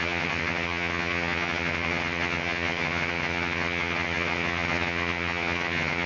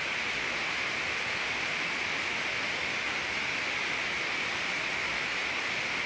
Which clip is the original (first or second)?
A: second